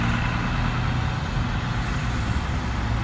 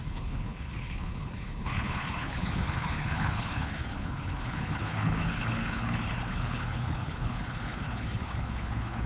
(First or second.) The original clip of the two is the first